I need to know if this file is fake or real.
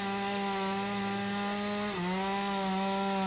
real